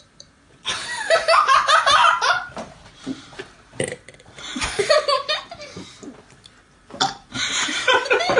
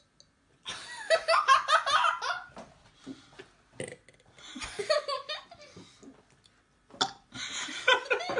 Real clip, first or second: second